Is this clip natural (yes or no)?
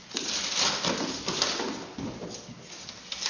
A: yes